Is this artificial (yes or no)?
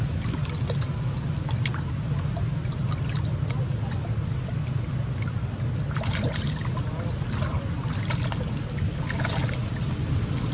no